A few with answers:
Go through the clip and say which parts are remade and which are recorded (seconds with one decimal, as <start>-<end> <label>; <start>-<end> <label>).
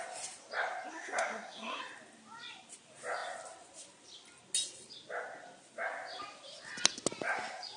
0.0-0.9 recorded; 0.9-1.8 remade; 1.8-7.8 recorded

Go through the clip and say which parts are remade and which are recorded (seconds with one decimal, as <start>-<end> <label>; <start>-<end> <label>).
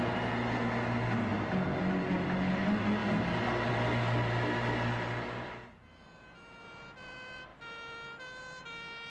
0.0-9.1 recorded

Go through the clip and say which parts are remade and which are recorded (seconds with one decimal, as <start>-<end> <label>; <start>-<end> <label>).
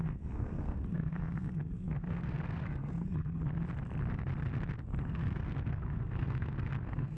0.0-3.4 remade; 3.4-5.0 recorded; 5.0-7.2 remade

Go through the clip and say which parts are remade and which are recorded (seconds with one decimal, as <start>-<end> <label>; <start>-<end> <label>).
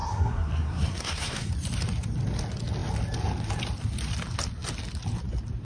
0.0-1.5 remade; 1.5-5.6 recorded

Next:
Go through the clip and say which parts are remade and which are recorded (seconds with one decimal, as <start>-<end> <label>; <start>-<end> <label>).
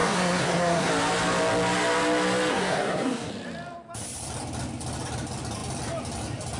0.0-0.9 remade; 0.9-2.5 recorded; 2.5-3.3 remade; 3.3-6.6 recorded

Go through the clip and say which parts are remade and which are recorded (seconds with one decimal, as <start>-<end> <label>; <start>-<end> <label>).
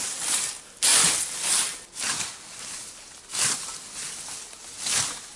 0.0-5.4 recorded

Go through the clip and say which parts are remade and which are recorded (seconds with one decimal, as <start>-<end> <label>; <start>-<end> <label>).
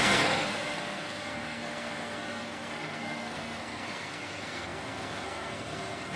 0.0-6.2 remade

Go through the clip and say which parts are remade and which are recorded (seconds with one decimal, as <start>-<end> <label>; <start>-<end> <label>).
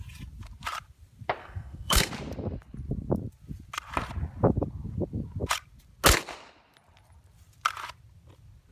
0.0-1.4 recorded; 1.4-2.1 remade; 2.1-8.7 recorded